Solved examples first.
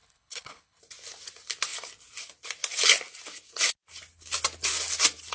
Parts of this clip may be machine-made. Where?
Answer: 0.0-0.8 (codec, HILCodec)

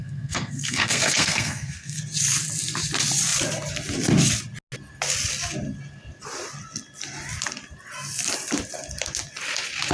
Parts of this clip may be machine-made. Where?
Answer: 0.0-2.0 (codec, SNAC)

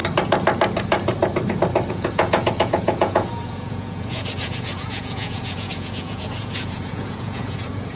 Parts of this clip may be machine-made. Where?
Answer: 1.9-8.0 (vocoder, Vocos)

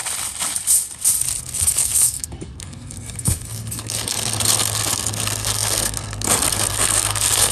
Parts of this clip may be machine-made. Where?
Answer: 1.4-7.5 (codec, SNAC)

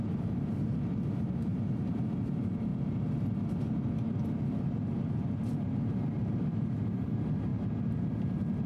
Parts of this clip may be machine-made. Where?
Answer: 0.0-2.7 (vocoder, BigVGAN v2); 4.5-8.7